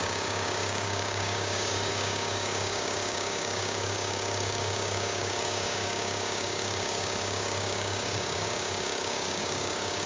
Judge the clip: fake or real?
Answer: fake